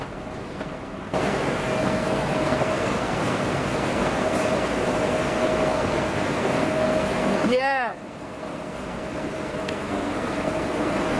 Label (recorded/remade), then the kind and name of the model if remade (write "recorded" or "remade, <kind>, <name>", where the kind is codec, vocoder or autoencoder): remade, codec, SNAC